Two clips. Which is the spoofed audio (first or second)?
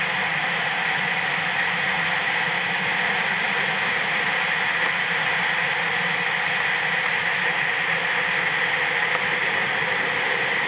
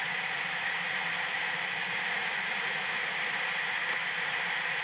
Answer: second